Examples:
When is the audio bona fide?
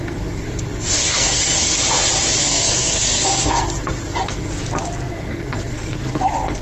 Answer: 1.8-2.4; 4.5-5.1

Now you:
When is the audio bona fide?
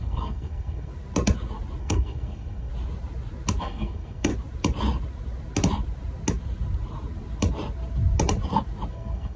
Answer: 0.9-1.8; 2.7-3.6; 4.3-8.9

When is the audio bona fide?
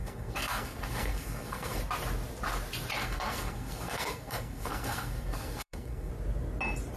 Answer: 1.8-3.0; 6.1-7.0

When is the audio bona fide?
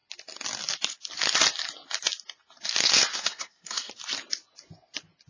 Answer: 0.0-3.1; 3.9-5.3